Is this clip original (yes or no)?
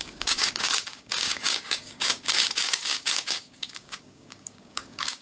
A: no